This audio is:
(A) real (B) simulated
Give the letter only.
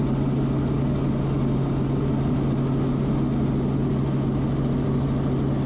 A